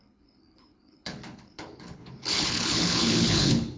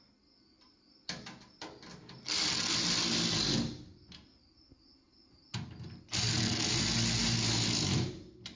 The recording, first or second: second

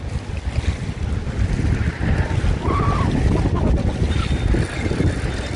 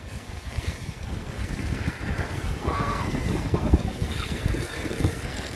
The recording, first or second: first